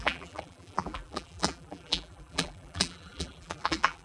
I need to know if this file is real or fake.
fake